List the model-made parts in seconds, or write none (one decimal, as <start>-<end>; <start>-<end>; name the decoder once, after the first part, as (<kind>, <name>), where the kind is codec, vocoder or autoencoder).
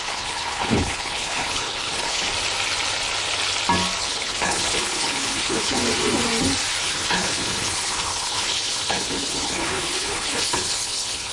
0.0-2.3 (codec, HILCodec); 4.0-5.8; 6.8-11.3